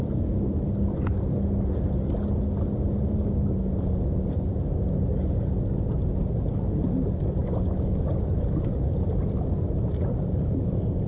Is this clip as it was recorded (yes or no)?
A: yes